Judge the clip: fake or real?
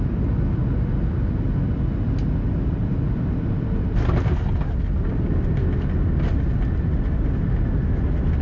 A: real